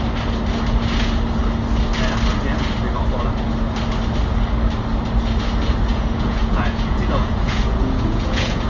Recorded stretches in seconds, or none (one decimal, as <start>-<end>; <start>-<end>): 0.0-5.9